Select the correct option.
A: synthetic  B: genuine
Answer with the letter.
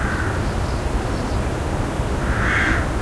B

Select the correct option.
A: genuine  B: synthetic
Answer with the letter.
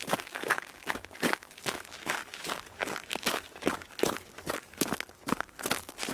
B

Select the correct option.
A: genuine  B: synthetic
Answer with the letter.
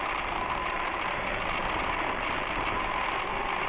A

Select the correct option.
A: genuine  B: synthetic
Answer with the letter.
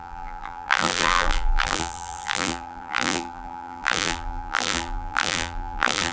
B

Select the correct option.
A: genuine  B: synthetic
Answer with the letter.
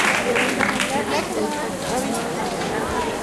A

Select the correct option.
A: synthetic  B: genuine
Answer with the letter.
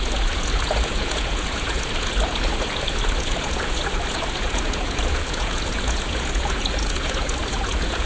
A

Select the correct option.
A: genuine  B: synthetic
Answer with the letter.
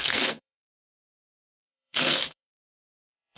B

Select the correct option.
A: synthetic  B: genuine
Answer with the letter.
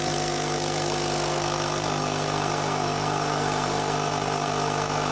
A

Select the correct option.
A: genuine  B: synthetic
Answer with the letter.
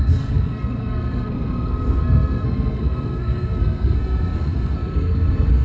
B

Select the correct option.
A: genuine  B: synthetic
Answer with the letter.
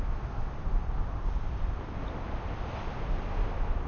A